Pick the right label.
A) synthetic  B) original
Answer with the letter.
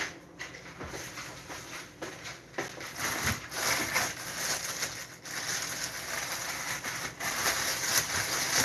B